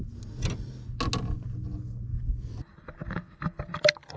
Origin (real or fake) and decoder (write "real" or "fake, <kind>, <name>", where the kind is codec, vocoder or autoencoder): real